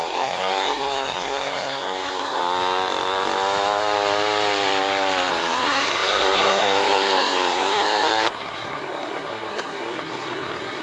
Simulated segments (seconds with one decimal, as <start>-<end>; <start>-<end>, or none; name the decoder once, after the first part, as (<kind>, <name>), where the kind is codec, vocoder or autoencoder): 0.0-2.4 (codec, SNAC); 5.3-10.8